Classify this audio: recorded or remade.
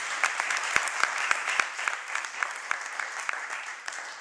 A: remade